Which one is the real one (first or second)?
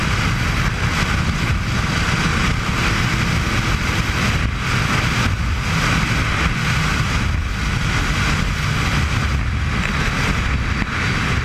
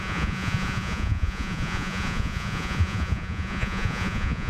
first